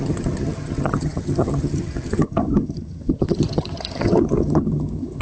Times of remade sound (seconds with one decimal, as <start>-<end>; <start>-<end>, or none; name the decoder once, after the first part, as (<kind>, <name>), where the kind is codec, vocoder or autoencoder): 0.0-5.2 (vocoder, HiFi-GAN)